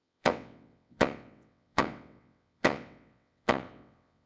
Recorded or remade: remade